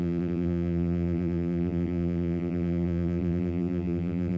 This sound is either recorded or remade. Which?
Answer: remade